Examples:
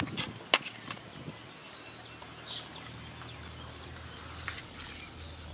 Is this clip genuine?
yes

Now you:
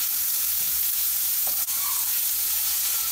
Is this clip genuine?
no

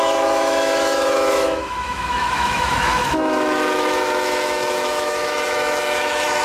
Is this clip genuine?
no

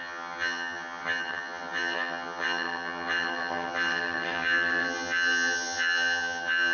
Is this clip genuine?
no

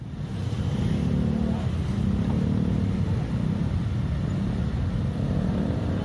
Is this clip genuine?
yes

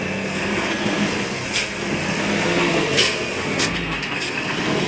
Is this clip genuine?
no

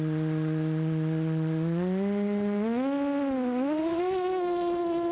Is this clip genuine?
yes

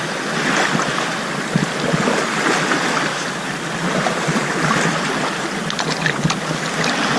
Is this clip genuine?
yes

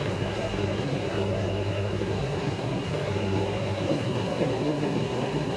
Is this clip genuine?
no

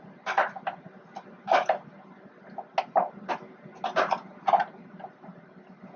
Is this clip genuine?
yes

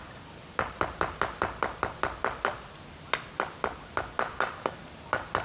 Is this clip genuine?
yes